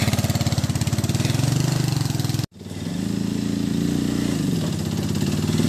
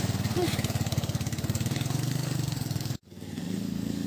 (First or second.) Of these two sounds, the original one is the first